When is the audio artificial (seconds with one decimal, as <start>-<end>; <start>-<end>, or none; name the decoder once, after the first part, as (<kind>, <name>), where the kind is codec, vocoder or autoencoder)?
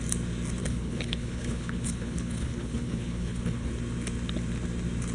0.6-3.7 (codec, HILCodec)